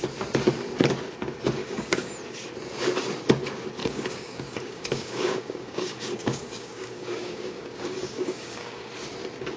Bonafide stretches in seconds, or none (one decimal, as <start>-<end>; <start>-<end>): 0.0-1.6; 2.1-3.8; 8.9-9.6